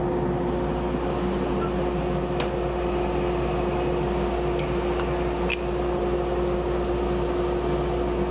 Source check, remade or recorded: recorded